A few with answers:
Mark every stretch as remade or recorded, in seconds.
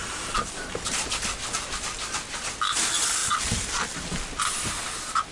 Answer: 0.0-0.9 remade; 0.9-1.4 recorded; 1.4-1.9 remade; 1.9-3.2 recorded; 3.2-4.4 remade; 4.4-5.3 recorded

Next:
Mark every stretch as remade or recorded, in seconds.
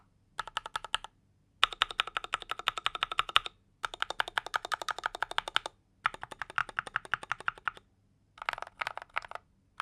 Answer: 0.0-9.8 recorded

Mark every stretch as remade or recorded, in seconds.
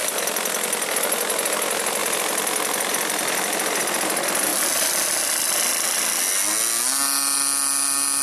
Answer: 0.0-2.0 recorded; 2.0-3.8 remade; 3.8-8.2 recorded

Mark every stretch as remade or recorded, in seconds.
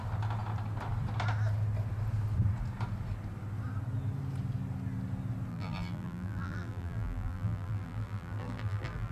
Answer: 0.0-5.5 recorded; 5.5-9.1 remade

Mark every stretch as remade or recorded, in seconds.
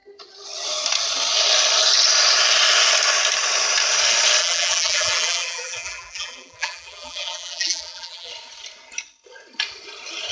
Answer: 0.0-4.4 recorded; 4.4-8.3 remade; 8.3-10.3 recorded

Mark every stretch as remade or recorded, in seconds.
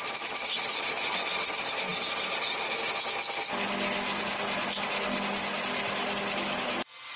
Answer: 0.0-7.2 recorded